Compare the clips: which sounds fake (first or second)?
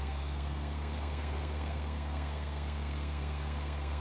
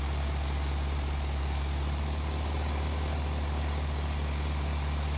first